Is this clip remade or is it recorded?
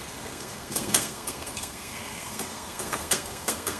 remade